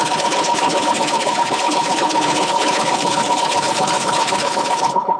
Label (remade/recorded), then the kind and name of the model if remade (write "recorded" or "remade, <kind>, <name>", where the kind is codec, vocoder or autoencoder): remade, codec, HILCodec